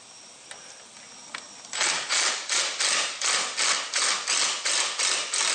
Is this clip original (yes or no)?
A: yes